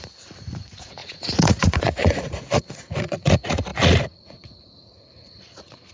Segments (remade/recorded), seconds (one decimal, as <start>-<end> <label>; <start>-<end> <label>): 0.0-5.9 remade